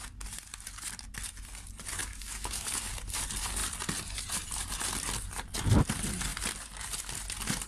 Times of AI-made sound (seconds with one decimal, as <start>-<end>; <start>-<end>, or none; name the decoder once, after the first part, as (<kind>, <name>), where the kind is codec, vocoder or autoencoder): 2.0-2.9 (codec, DAC)